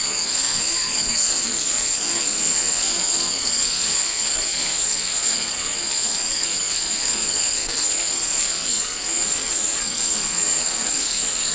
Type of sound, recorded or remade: remade